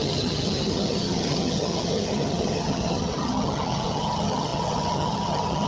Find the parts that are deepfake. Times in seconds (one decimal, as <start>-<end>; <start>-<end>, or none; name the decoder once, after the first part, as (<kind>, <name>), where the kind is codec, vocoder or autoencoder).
0.0-5.7 (vocoder, HiFi-GAN)

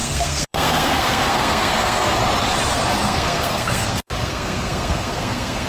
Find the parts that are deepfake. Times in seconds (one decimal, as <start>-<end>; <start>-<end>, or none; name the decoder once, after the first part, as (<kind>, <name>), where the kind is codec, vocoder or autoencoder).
0.0-2.2 (codec, SNAC); 3.0-5.7

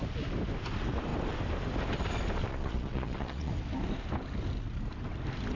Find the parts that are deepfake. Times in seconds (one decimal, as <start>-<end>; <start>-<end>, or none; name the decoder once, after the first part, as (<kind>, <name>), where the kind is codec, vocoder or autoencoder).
2.4-3.5 (vocoder, Vocos)

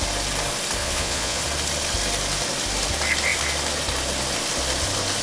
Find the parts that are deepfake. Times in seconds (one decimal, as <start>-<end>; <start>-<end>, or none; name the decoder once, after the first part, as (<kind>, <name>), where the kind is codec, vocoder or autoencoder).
0.8-1.4 (vocoder, Vocos)

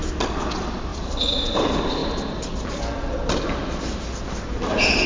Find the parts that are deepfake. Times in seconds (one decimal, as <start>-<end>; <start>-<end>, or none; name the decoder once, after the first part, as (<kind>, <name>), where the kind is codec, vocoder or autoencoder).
none

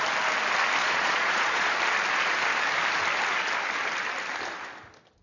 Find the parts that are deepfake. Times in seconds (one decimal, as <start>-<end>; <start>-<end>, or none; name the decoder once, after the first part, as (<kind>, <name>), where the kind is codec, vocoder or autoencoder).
0.8-1.7 (vocoder, Vocos)